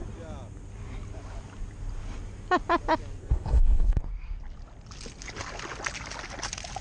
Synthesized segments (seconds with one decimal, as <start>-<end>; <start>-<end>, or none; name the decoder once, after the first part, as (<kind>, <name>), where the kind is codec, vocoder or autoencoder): 3.2-4.0 (codec, SNAC)